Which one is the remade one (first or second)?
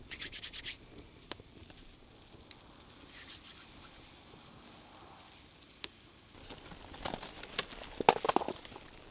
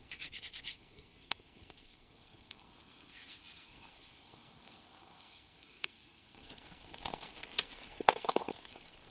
second